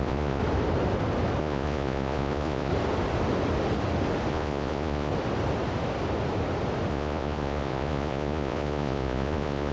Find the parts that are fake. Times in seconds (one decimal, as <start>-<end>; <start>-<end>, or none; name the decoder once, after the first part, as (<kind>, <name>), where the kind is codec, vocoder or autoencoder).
0.0-0.4 (vocoder, Vocos); 1.4-2.7; 4.3-5.1; 6.9-9.7